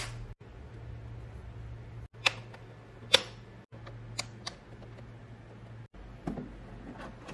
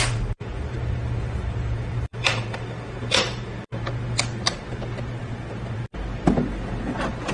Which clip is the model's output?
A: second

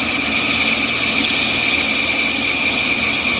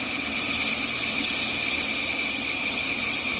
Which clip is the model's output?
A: second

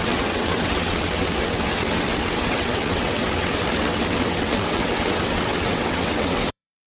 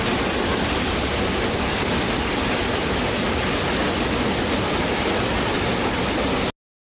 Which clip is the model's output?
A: first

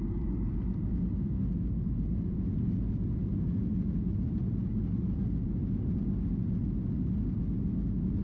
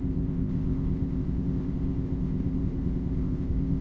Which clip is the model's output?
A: second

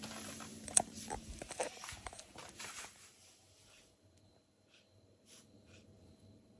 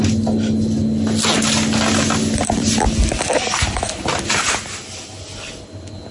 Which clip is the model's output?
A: first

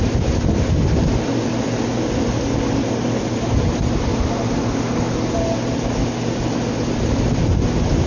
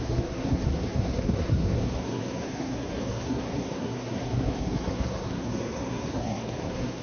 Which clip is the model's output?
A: second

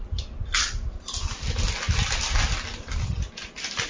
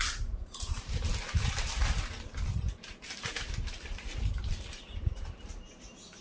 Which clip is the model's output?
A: second